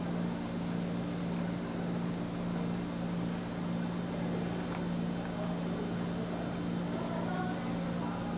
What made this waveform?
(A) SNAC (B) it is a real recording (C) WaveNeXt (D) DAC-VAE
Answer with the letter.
B